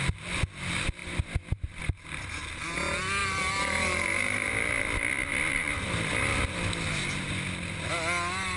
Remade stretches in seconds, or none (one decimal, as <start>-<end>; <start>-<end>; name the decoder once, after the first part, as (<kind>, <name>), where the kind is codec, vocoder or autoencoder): 1.0-1.8 (vocoder, BigVGAN v2); 3.2-6.4